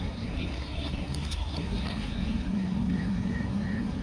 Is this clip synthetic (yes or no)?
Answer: yes